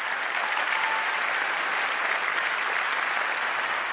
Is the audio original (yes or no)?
yes